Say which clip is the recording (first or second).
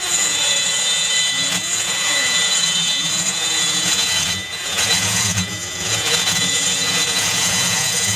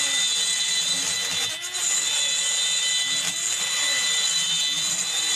second